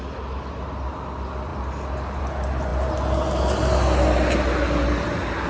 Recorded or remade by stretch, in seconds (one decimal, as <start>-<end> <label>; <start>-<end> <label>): 0.0-5.5 recorded